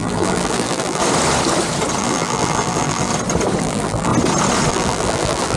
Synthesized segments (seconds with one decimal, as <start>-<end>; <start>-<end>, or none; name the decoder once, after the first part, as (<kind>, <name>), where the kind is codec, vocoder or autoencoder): 0.0-1.0 (vocoder, BigVGAN v2); 2.0-3.1; 3.6-4.1; 4.7-5.6